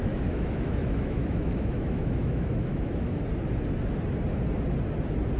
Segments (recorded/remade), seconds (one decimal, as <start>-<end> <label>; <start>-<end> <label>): 0.0-3.2 remade; 3.2-5.4 recorded